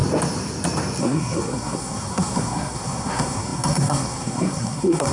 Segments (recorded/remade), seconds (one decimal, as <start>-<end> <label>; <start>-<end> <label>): 0.0-1.0 recorded; 1.0-5.1 remade